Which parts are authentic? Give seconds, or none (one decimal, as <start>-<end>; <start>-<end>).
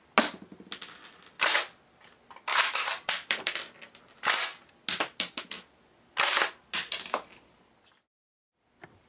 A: 0.0-2.5; 3.4-9.1